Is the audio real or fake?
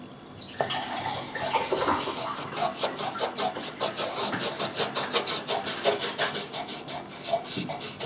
real